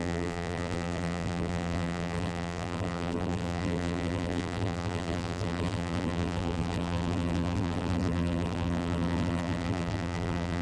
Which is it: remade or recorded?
remade